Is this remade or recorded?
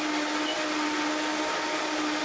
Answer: recorded